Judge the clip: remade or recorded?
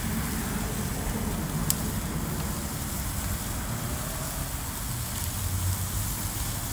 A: recorded